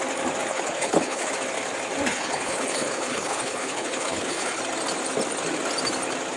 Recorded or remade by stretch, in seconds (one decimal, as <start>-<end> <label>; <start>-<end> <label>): 0.0-0.5 recorded; 0.5-1.3 remade; 1.3-2.1 recorded; 2.1-4.6 remade; 4.6-6.4 recorded